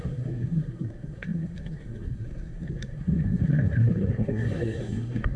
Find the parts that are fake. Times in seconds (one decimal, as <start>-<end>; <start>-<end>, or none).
0.0-5.4